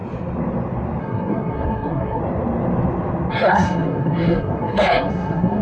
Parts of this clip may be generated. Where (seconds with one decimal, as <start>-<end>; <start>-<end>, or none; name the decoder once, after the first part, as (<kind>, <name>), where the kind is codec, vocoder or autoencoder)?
1.0-2.2 (codec, SNAC); 3.3-5.6